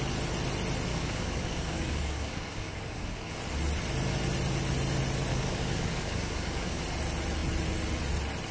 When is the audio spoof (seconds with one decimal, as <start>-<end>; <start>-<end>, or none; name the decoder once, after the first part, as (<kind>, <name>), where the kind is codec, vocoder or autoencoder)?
0.9-3.4 (codec, DAC); 5.3-6.8